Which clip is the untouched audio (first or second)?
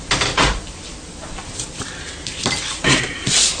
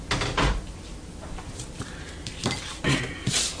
second